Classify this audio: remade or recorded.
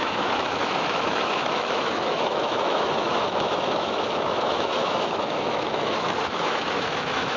remade